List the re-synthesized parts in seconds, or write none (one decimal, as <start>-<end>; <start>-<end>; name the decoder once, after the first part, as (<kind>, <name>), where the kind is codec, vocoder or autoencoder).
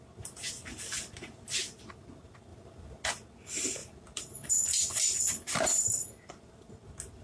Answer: 3.8-6.5 (vocoder, BigVGAN v2)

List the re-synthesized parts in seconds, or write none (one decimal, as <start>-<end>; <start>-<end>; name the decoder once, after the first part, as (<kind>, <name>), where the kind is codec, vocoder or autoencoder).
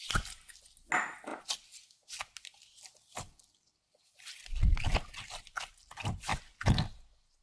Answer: none